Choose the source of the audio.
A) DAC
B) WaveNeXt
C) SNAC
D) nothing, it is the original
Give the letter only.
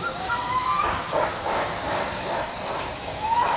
A